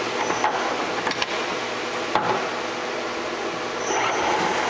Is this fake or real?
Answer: real